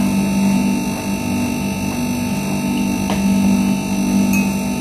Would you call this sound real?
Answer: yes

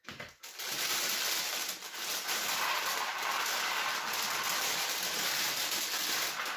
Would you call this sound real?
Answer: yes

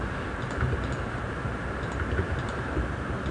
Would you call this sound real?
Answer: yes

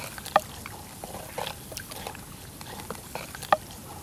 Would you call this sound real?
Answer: yes